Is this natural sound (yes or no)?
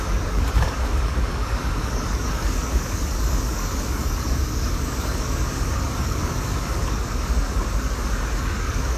no